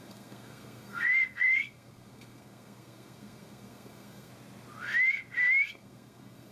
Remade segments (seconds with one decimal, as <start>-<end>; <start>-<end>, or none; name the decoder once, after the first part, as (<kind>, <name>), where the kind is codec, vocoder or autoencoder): 0.0-4.3 (codec, SNAC); 5.7-6.5